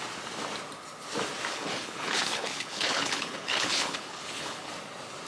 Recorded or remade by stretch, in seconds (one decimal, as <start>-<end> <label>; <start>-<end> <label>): 0.0-1.5 recorded; 1.5-4.7 remade; 4.7-5.3 recorded